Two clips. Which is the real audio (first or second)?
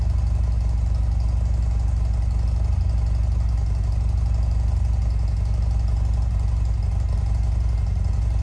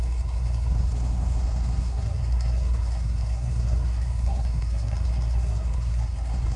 first